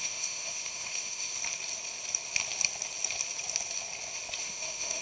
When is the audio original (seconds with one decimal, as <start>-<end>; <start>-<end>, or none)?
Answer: 1.4-4.4